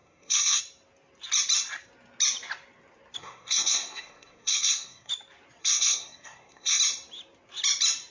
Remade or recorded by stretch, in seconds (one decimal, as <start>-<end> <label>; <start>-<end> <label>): 0.0-0.6 remade; 0.6-3.2 recorded; 3.2-5.1 remade; 5.1-5.6 recorded; 5.6-6.8 remade; 6.8-8.1 recorded